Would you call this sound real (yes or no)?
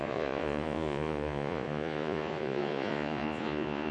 no